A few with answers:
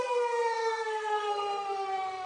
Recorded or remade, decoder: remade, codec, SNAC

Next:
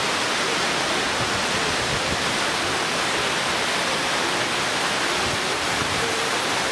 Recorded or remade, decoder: recorded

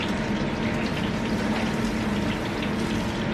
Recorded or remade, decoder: recorded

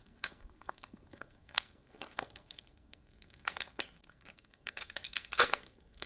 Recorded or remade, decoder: remade, codec, SNAC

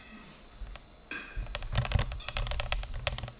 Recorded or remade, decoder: recorded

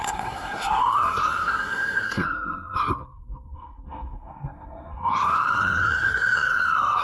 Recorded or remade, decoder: remade, codec, SNAC